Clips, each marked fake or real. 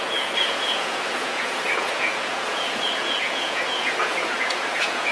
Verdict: fake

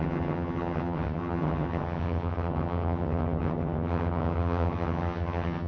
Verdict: fake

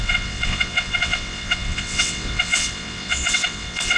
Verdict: fake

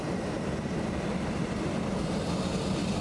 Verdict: real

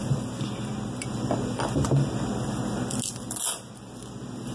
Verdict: real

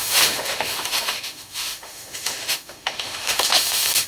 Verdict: fake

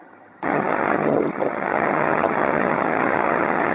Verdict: fake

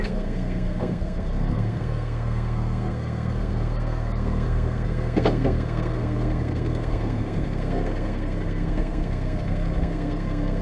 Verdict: fake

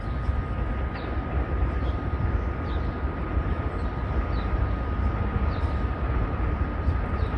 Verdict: real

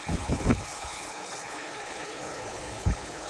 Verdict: fake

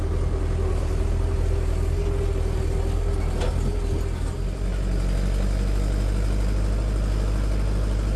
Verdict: real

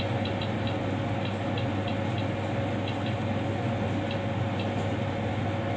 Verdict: real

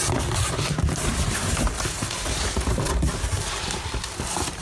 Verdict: real